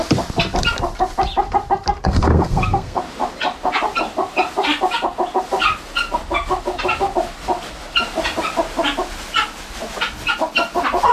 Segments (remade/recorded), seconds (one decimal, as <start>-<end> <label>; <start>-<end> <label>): 0.0-2.0 recorded; 2.0-3.0 remade; 3.0-11.1 recorded